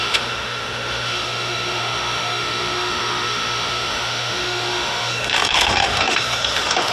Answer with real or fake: fake